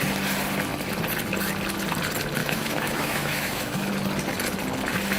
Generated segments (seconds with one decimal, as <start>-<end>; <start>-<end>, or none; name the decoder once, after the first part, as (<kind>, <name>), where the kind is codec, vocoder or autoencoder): 2.4-3.9 (autoencoder, DAC-VAE)